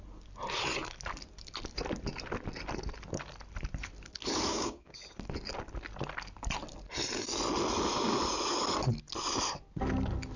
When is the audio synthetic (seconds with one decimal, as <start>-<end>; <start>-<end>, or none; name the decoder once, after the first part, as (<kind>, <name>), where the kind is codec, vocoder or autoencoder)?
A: 4.5-5.0 (codec, DAC)